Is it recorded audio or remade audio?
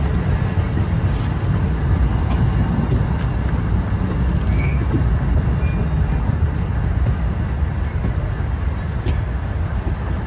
recorded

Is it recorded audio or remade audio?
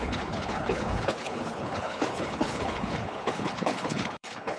remade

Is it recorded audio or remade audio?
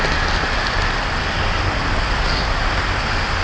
recorded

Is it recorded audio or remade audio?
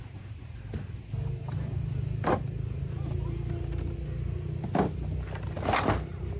recorded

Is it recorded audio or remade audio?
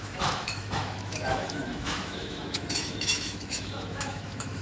remade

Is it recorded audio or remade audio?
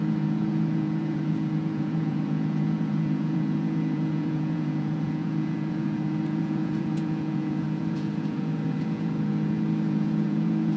remade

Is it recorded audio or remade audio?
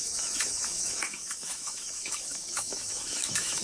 remade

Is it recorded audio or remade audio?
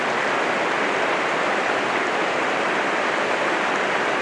remade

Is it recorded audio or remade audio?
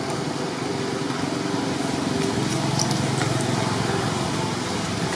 recorded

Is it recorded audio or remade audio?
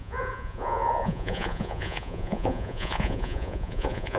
remade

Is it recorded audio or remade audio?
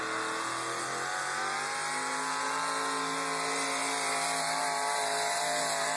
recorded